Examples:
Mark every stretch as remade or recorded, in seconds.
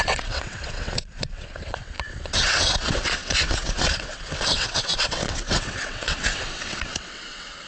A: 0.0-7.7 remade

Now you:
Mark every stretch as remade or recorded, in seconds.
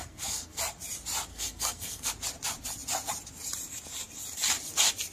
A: 0.0-0.6 remade; 0.6-1.3 recorded; 1.3-2.1 remade; 2.1-5.1 recorded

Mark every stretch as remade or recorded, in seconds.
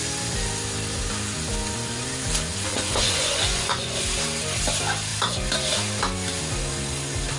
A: 0.0-2.7 recorded; 2.7-4.0 remade; 4.0-7.4 recorded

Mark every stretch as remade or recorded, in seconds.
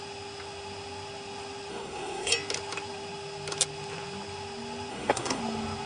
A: 0.0-1.7 recorded; 1.7-2.3 remade; 2.3-4.9 recorded; 4.9-5.4 remade; 5.4-5.9 recorded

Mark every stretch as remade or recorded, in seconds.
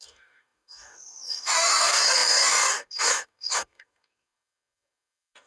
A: 0.0-5.5 remade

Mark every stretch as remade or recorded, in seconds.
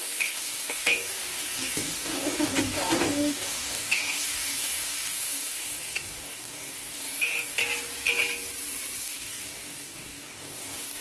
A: 0.0-7.6 remade; 7.6-9.0 recorded; 9.0-11.0 remade